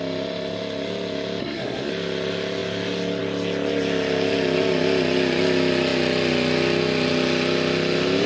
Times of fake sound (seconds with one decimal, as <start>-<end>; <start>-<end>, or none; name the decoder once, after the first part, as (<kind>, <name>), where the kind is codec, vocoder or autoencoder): 1.4-1.9 (codec, SNAC)